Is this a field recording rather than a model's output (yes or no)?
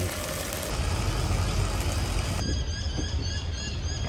yes